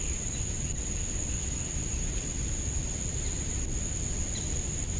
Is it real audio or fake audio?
real